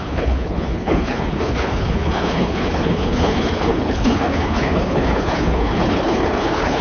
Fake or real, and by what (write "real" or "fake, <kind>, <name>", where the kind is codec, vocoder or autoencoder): fake, codec, HILCodec